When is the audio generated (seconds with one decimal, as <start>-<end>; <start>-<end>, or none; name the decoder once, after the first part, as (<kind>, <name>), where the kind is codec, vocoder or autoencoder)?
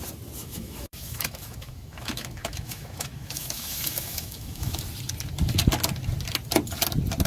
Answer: 0.4-4.8 (autoencoder, DAC-VAE)